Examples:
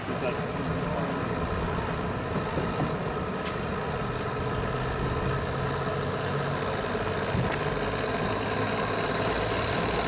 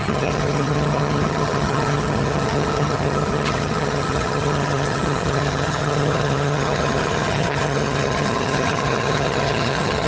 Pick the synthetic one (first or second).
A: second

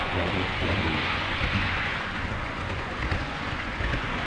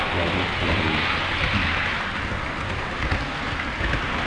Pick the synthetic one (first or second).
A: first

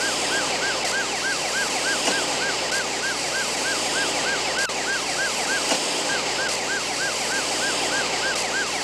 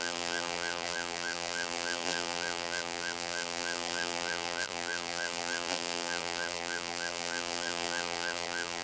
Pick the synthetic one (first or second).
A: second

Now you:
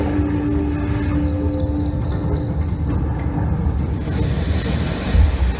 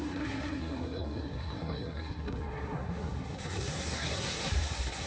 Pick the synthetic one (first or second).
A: second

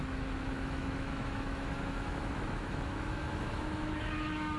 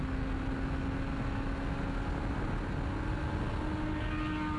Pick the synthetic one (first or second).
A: first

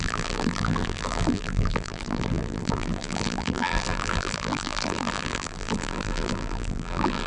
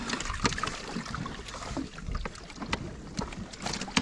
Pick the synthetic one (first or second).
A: first